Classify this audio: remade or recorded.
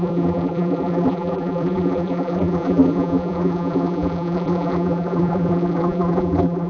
remade